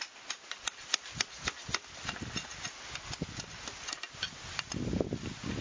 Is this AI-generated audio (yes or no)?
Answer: no